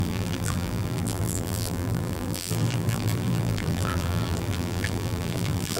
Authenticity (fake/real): fake